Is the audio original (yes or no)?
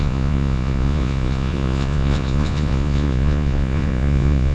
no